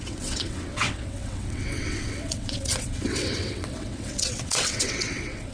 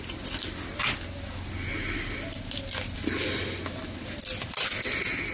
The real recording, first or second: second